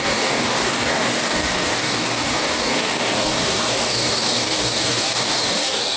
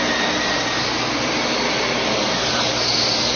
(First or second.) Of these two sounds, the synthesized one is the first